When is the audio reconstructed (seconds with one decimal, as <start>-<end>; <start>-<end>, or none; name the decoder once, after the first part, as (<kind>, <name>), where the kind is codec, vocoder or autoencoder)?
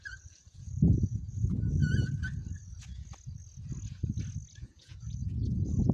0.0-1.8 (vocoder, Vocos); 4.6-5.9